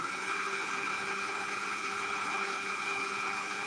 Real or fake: fake